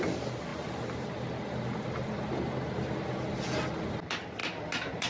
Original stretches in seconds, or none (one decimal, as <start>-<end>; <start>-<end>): 0.0-5.1